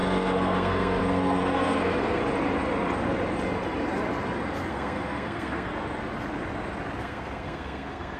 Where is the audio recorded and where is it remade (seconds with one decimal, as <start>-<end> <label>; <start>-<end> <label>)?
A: 0.0-2.2 remade; 2.2-4.7 recorded; 4.7-5.7 remade; 5.7-7.0 recorded; 7.0-8.2 remade

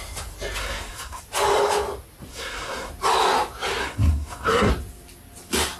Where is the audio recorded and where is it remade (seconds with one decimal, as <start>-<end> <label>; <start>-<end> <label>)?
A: 0.0-0.6 recorded; 0.6-1.2 remade; 1.2-2.3 recorded; 2.3-2.9 remade; 2.9-3.8 recorded; 3.8-4.7 remade; 4.7-5.8 recorded